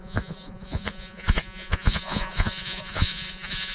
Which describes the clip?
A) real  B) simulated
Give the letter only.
B